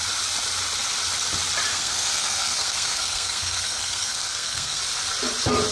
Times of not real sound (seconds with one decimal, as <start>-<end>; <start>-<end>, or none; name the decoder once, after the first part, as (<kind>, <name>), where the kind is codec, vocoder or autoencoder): 1.7-4.8 (codec, SNAC)